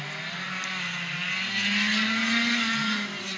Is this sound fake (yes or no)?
no